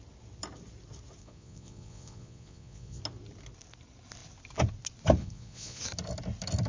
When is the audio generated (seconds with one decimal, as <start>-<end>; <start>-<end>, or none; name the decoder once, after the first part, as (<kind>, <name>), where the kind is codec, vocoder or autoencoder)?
1.2-3.0 (vocoder, Vocos); 5.2-5.8

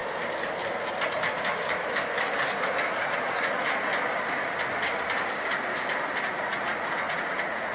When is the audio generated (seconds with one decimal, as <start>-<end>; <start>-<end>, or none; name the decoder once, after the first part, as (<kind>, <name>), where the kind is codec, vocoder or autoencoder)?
2.9-3.9 (vocoder, Vocos); 6.2-7.7

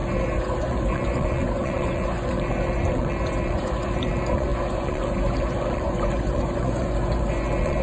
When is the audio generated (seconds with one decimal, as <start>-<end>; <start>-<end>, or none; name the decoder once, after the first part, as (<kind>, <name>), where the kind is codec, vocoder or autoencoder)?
0.0-7.8 (vocoder, Vocos)

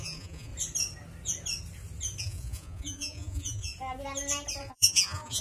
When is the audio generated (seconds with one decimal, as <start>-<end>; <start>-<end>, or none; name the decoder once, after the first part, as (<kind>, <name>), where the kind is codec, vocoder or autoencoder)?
0.0-0.5 (vocoder, Vocos); 2.2-3.7; 4.6-5.4